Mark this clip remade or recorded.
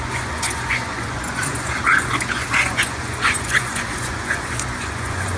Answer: remade